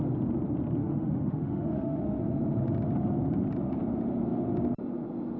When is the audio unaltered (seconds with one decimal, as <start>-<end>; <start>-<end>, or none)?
0.0-0.8; 2.2-5.4